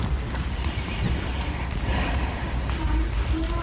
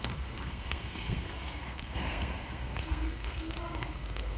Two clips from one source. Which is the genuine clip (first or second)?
first